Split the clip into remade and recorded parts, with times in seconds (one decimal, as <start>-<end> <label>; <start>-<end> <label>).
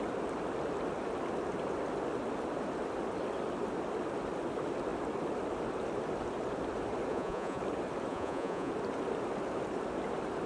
0.0-7.1 recorded; 7.1-7.6 remade; 7.6-8.1 recorded; 8.1-8.7 remade; 8.7-10.5 recorded